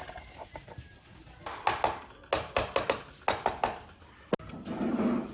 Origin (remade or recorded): recorded